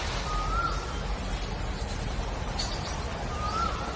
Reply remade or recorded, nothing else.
recorded